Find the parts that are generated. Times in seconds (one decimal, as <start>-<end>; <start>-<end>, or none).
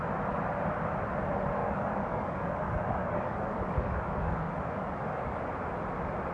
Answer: 1.6-5.4